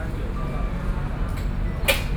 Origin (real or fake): real